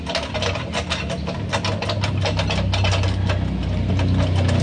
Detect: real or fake real